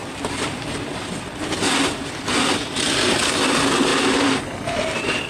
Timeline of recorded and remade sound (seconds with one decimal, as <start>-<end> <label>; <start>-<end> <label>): 0.0-3.2 remade; 3.2-3.9 recorded; 3.9-5.3 remade